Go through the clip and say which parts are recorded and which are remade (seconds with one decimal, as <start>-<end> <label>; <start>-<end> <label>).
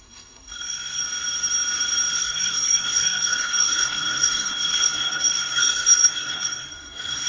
0.0-1.0 remade; 1.0-2.1 recorded; 2.1-7.3 remade